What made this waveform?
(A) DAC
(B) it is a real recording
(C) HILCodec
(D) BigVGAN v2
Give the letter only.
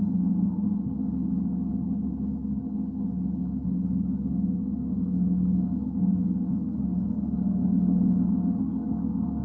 C